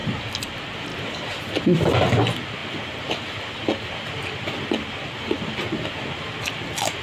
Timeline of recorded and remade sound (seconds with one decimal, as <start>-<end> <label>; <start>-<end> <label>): 0.0-7.0 recorded